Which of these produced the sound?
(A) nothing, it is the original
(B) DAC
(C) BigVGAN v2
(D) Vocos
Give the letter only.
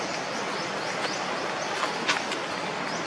A